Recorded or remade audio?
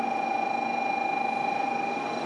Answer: recorded